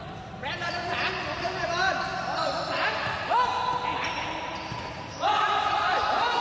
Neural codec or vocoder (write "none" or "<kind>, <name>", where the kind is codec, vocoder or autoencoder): none